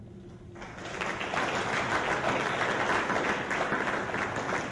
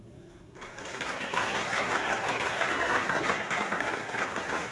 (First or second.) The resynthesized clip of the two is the second